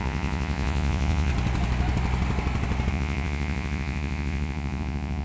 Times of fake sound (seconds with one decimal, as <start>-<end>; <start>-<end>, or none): 0.0-1.3; 2.9-5.2